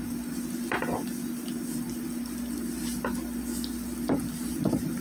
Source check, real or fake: real